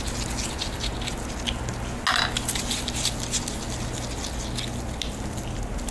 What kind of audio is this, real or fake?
real